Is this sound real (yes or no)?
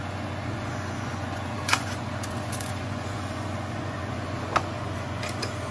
no